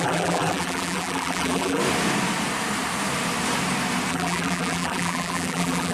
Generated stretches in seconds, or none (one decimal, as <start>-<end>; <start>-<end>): 0.0-1.8; 4.1-5.9